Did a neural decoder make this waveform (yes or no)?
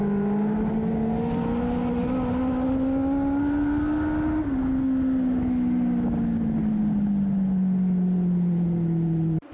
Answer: no